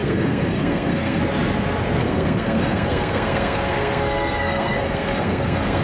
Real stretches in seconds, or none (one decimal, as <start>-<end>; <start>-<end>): 1.2-2.0